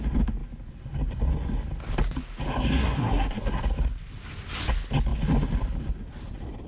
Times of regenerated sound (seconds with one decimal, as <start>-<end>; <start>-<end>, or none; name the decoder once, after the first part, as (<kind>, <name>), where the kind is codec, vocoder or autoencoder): 2.8-3.6 (codec, SNAC)